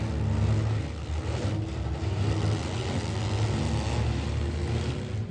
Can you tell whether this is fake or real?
real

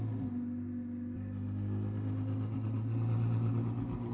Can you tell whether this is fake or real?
real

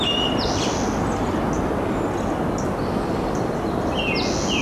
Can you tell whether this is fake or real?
real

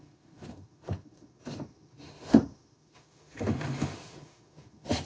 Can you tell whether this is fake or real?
fake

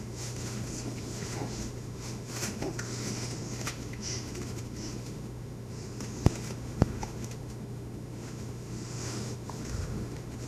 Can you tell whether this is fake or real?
fake